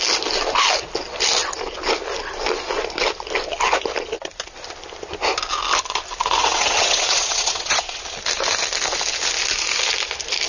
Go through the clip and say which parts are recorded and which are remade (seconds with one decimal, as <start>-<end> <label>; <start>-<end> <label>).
0.0-6.4 recorded; 6.4-8.0 remade; 8.0-10.5 recorded